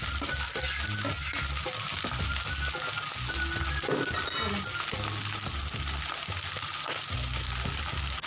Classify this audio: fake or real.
real